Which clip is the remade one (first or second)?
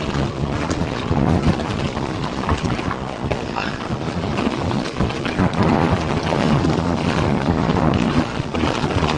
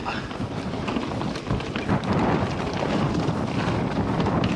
first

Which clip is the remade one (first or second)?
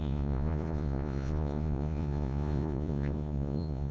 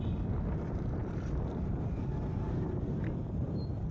first